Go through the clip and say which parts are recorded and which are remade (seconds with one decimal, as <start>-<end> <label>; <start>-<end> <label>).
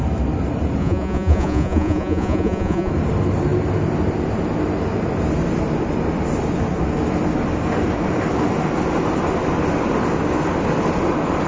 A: 0.0-0.8 recorded; 0.8-2.9 remade; 2.9-11.5 recorded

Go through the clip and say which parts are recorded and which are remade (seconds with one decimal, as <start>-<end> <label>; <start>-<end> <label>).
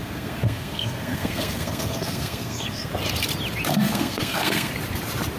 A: 0.0-2.9 remade; 2.9-3.7 recorded; 3.7-4.7 remade; 4.7-5.4 recorded